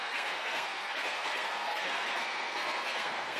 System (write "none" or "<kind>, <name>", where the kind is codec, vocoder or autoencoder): codec, SNAC